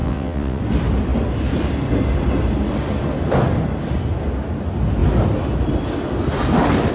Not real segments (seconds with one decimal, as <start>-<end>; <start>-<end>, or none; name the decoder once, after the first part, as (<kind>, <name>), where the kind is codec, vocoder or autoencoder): 0.0-0.6 (vocoder, WaveNeXt)